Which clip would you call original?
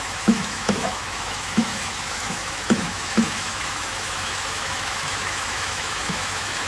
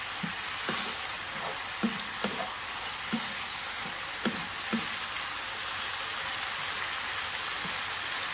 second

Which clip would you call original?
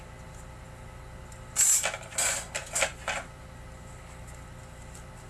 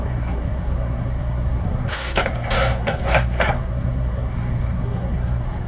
first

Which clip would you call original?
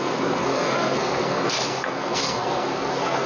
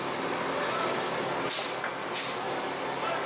second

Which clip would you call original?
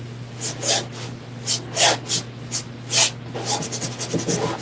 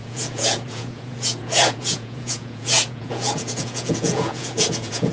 first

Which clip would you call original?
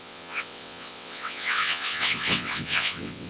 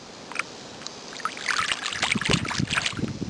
second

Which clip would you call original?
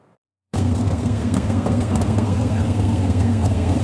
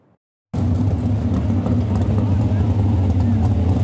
second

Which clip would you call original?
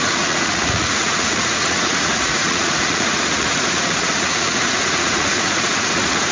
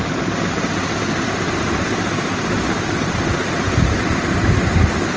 second